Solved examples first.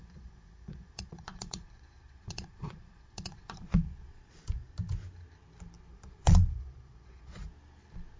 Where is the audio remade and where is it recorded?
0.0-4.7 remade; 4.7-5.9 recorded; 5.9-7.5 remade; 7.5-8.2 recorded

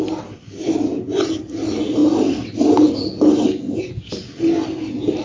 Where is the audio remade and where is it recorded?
0.0-5.2 recorded

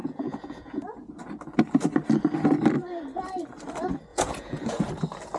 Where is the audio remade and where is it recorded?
0.0-1.1 remade; 1.1-4.1 recorded; 4.1-4.8 remade; 4.8-5.4 recorded

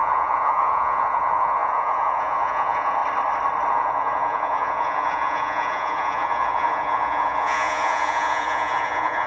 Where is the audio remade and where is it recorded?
0.0-3.0 remade; 3.0-3.7 recorded; 3.7-9.3 remade

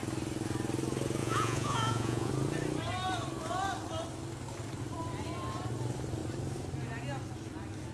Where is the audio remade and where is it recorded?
0.0-1.2 recorded; 1.2-2.3 remade; 2.3-7.9 recorded

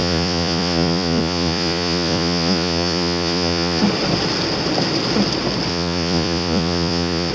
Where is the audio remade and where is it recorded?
0.0-3.8 remade; 3.8-5.7 recorded; 5.7-7.3 remade

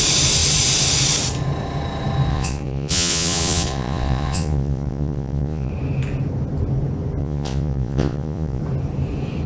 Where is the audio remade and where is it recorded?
0.0-2.3 recorded; 2.3-5.7 remade; 5.7-7.2 recorded; 7.2-8.6 remade; 8.6-9.5 recorded

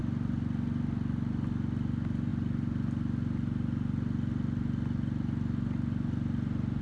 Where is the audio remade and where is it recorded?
0.0-6.8 recorded